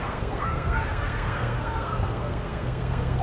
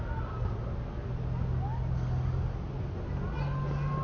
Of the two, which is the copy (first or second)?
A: first